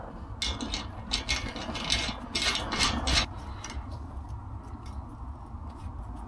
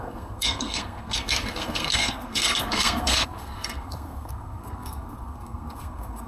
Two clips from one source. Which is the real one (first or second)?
first